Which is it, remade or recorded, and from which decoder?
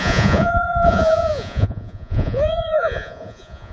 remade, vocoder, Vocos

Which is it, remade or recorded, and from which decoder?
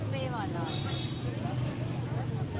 recorded